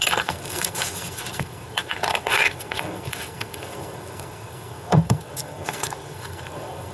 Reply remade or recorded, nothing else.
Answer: remade